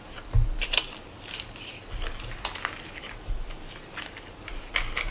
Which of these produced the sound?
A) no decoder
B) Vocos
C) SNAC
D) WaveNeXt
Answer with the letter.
A